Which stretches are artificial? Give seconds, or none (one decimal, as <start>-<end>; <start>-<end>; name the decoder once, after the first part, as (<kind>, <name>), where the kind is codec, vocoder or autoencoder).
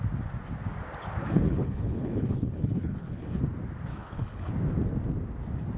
1.2-3.4 (codec, HILCodec); 3.9-4.5